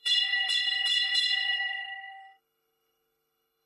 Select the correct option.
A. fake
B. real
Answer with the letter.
A